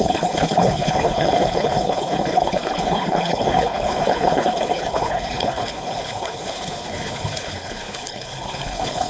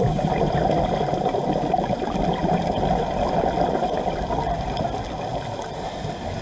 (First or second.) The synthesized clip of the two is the first